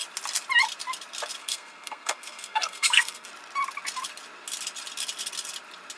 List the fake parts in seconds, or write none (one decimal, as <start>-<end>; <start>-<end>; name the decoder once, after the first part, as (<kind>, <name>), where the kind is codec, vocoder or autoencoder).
1.4-3.3 (codec, SNAC)